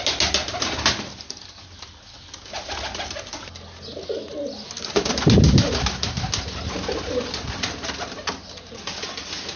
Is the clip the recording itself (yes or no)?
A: yes